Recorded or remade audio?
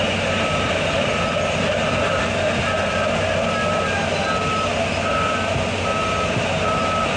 recorded